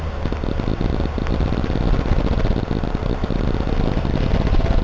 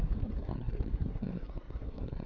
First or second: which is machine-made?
second